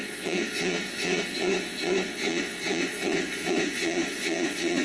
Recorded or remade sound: remade